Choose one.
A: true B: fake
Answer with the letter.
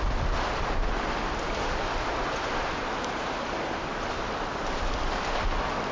A